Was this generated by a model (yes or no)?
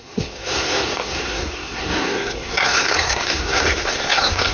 yes